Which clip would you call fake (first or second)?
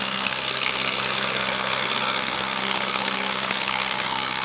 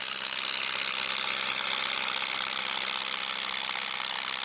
first